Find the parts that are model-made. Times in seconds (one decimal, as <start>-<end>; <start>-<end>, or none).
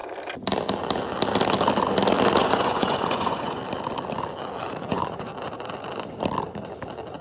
2.4-3.6; 4.8-5.3